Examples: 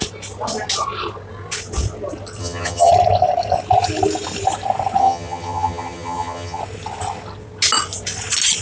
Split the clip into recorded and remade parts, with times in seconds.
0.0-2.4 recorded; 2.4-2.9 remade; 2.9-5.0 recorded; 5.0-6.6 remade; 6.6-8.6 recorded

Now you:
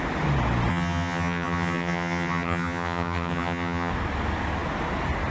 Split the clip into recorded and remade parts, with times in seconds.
0.0-0.7 recorded; 0.7-3.9 remade; 3.9-5.3 recorded